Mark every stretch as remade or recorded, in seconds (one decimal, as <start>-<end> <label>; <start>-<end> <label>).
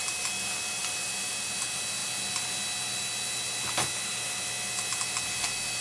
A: 0.0-5.8 recorded